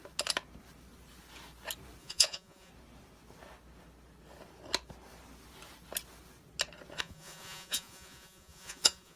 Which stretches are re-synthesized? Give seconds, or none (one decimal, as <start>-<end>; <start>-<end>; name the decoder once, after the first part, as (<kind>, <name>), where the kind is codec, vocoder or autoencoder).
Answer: 2.0-2.7 (vocoder, Vocos); 7.0-9.2

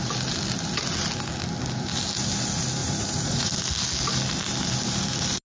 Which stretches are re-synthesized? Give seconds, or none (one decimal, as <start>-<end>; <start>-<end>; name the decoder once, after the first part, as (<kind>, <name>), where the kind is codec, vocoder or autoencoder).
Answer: 2.8-3.5 (vocoder, Vocos)

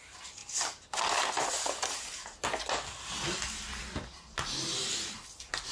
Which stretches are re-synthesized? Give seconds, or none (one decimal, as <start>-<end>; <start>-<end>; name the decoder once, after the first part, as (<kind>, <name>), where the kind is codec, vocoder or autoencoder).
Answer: none

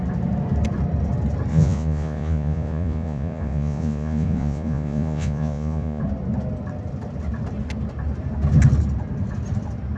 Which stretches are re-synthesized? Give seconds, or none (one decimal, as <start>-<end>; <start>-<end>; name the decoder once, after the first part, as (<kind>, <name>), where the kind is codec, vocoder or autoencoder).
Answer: 1.5-6.0 (vocoder, Vocos)

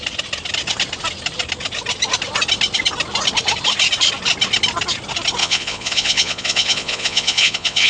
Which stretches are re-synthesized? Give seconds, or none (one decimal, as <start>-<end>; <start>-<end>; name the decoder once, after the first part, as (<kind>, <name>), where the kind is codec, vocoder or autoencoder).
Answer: 5.4-7.9 (vocoder, Vocos)

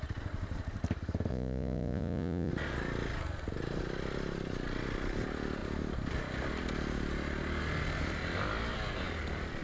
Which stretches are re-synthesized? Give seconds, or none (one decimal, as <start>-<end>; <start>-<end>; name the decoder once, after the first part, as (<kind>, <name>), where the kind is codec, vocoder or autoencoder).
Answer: 1.3-2.5 (vocoder, Vocos)

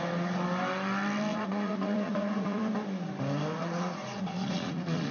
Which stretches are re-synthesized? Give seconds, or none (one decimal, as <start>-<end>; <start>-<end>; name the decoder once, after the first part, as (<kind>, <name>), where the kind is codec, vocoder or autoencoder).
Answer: 1.3-2.6 (vocoder, Vocos); 3.6-5.1

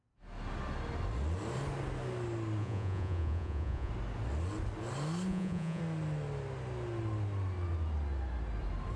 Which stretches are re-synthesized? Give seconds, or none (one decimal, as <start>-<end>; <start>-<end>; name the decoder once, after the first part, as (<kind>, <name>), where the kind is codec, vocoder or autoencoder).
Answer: 2.6-3.9 (vocoder, Vocos); 5.3-5.8